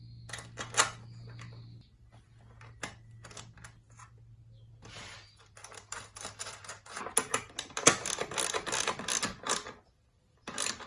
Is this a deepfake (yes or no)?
no